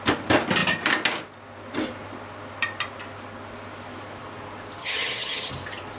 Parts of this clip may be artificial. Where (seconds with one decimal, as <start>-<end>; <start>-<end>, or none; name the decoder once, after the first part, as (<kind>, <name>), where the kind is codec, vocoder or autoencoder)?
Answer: 4.8-5.5 (vocoder, HiFi-GAN)